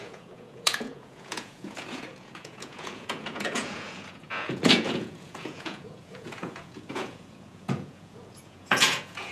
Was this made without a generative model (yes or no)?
no